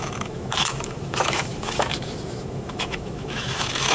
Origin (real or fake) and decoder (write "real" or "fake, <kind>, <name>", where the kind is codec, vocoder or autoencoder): fake, autoencoder, DAC-VAE